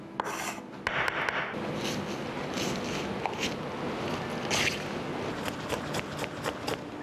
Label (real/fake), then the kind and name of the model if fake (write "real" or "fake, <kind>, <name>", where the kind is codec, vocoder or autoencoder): real